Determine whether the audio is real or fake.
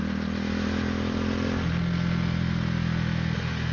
real